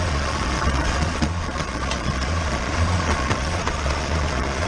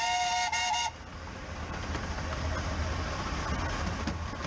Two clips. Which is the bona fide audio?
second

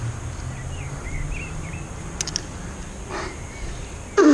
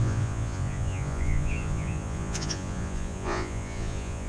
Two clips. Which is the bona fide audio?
first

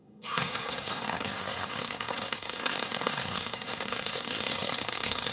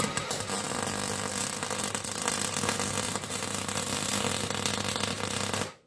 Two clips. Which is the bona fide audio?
second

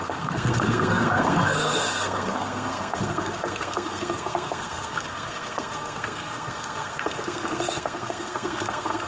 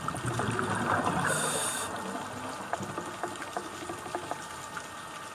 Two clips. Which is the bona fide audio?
second